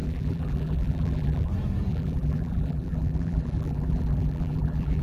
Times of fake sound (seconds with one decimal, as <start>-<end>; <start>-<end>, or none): 0.0-1.5; 1.9-5.0